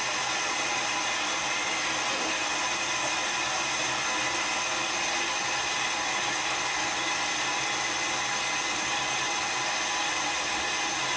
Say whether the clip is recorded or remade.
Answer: recorded